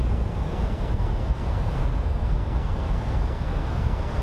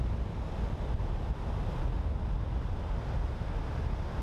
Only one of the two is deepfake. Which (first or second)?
first